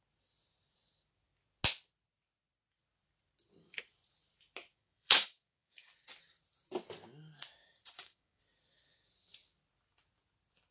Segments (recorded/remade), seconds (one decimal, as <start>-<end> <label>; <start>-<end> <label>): 0.0-4.7 recorded; 4.7-5.9 remade; 5.9-7.6 recorded; 7.6-8.4 remade; 8.4-10.7 recorded